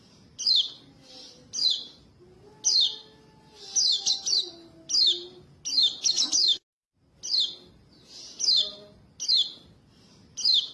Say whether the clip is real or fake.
real